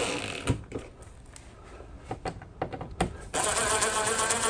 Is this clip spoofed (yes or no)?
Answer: no